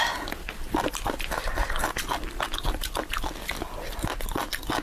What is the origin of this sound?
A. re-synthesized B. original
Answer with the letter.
B